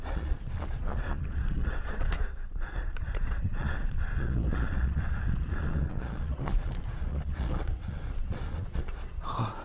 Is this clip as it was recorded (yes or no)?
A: no